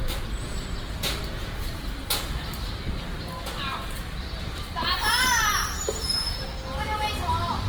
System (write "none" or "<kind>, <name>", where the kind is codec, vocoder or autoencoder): vocoder, BigVGAN v2